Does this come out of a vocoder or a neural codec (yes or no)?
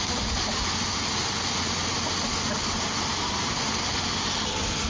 no